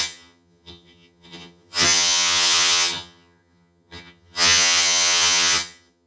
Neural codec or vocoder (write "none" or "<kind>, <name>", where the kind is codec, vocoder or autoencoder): vocoder, HiFi-GAN